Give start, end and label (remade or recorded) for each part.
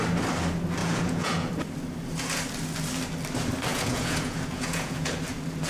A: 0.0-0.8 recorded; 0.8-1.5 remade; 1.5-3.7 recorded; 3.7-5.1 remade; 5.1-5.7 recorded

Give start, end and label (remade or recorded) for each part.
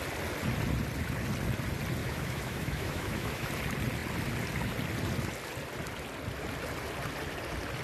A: 0.0-2.0 recorded; 2.0-3.5 remade; 3.5-7.8 recorded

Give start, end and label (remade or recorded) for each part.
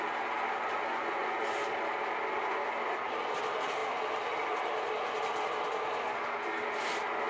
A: 0.0-0.9 recorded; 0.9-1.4 remade; 1.4-7.3 recorded